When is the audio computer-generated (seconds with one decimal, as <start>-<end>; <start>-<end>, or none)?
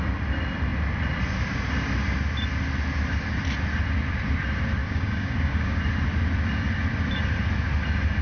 4.8-5.8